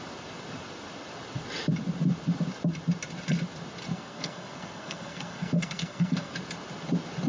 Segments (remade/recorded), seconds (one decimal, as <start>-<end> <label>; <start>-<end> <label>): 0.0-3.9 recorded; 3.9-6.3 remade; 6.3-7.3 recorded